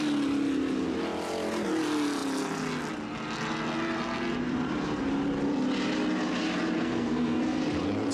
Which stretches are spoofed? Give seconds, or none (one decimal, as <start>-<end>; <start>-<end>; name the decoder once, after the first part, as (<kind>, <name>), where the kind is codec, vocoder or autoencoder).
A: 6.8-7.6 (codec, SNAC)